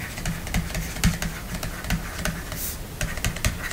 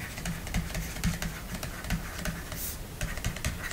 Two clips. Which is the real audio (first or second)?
first